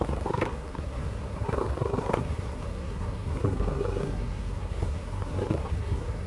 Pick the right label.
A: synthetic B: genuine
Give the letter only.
A